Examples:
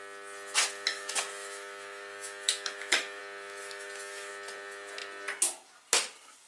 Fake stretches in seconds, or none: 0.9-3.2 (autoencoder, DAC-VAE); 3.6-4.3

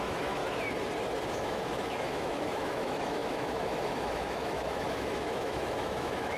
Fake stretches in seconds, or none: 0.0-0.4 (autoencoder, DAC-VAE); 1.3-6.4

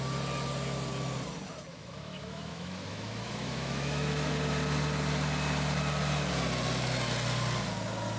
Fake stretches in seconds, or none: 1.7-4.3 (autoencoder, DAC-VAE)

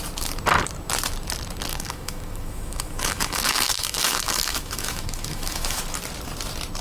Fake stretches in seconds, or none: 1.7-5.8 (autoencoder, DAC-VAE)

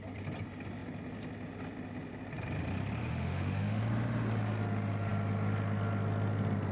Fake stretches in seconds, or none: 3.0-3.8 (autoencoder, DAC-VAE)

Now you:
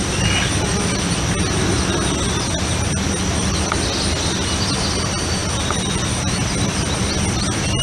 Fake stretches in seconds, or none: none

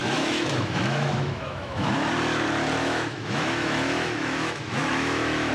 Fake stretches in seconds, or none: 0.0-2.1 (autoencoder, DAC-VAE); 2.8-5.5